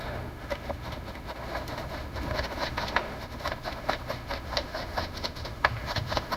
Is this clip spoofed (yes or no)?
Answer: yes